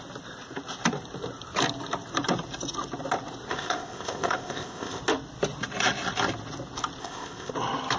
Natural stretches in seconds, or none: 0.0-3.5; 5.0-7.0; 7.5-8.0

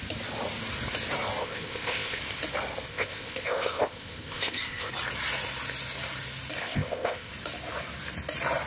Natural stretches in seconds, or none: 0.0-1.4; 2.2-2.9; 4.9-6.6; 7.3-8.7

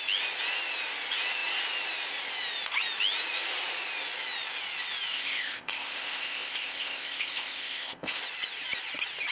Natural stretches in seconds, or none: 0.0-5.1; 8.2-9.3

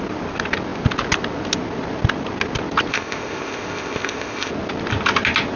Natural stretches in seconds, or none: 0.0-2.9; 4.5-5.6

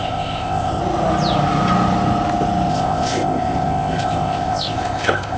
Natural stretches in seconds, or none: 0.8-2.7

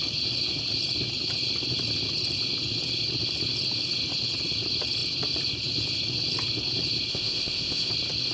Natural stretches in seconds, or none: 0.0-7.1; 7.9-8.3

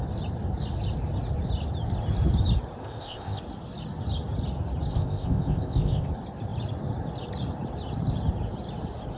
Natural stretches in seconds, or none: 0.0-2.8; 3.4-4.9; 6.1-9.2